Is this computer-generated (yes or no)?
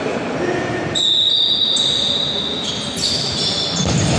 no